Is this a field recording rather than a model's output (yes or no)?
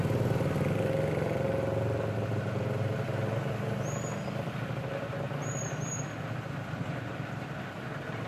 yes